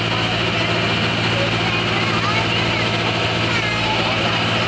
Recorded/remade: recorded